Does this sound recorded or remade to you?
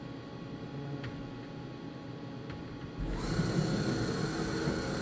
recorded